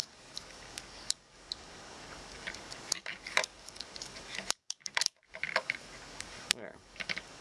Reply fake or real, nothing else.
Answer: fake